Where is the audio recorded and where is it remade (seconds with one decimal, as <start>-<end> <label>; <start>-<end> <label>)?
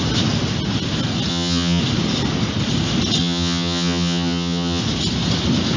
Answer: 0.0-1.3 recorded; 1.3-1.8 remade; 1.8-3.2 recorded; 3.2-4.8 remade; 4.8-5.8 recorded